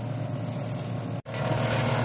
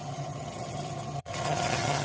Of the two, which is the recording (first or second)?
first